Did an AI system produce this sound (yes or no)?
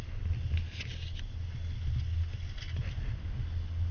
no